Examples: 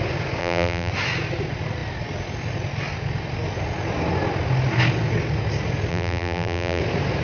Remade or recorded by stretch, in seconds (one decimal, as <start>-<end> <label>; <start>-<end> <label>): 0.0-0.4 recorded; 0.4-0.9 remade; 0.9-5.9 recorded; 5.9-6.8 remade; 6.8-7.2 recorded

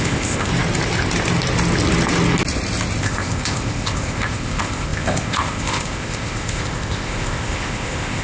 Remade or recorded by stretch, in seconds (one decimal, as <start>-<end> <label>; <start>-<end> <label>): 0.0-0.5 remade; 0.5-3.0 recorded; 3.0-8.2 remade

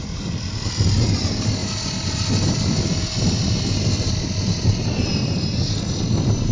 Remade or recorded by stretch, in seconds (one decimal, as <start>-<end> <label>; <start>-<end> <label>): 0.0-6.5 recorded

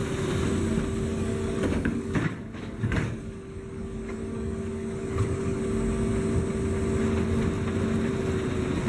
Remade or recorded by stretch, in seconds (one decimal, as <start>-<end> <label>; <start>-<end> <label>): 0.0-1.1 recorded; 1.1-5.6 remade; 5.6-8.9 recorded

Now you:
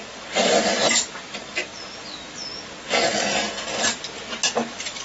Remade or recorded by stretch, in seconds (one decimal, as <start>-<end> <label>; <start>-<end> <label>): 0.0-5.0 recorded

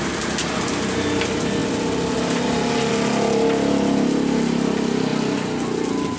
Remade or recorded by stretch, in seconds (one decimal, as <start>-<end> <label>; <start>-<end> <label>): 0.0-6.2 recorded

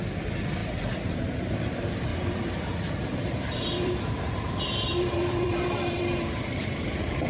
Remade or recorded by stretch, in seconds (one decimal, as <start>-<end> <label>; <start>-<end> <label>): 0.0-0.6 recorded; 0.6-1.5 remade; 1.5-2.1 recorded; 2.1-6.0 remade; 6.0-7.3 recorded